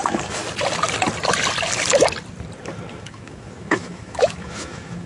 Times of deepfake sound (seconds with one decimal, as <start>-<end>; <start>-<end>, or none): 0.0-0.4; 2.9-5.1